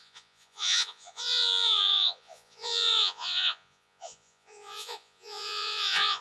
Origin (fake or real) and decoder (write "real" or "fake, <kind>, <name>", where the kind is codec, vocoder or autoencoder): fake, vocoder, Vocos